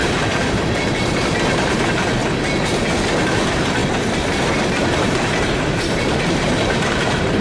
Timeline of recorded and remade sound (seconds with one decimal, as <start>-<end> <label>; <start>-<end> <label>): 0.0-2.2 remade; 2.2-3.3 recorded; 3.3-3.8 remade; 3.8-4.9 recorded; 4.9-7.4 remade